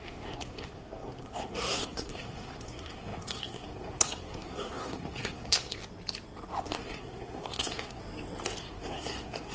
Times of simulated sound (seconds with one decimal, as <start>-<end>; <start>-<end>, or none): 0.0-5.8; 6.6-8.0; 8.6-9.5